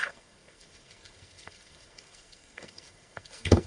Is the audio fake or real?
fake